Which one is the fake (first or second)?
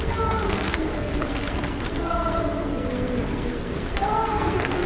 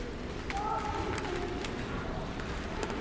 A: first